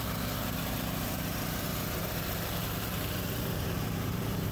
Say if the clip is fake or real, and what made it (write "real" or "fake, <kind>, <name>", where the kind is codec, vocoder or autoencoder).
fake, vocoder, BigVGAN v2